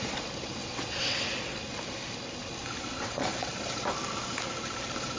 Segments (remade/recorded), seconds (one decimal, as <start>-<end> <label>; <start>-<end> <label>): 0.0-0.6 recorded; 0.6-1.2 remade; 1.2-2.6 recorded; 2.6-3.5 remade; 3.5-5.2 recorded